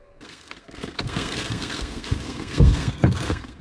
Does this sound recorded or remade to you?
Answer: remade